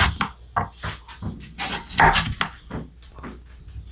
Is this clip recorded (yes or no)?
yes